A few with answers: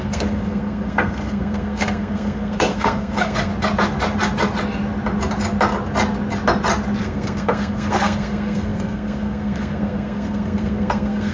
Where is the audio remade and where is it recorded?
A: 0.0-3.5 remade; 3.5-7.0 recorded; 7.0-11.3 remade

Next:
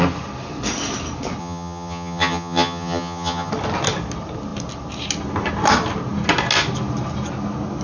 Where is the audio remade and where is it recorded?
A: 0.0-1.4 recorded; 1.4-3.5 remade; 3.5-7.8 recorded